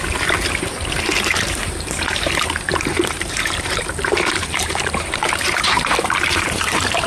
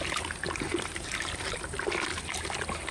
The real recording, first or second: second